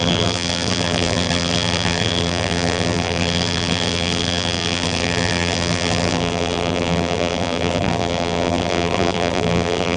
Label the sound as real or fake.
fake